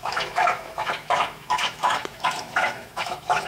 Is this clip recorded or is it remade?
remade